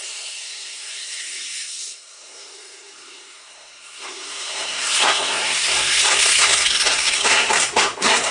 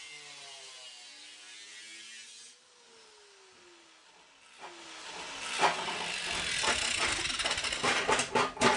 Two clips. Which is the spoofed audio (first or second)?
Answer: first